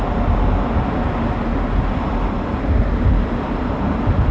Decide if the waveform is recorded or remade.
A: recorded